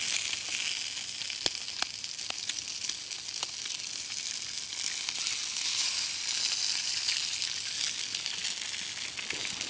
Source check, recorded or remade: recorded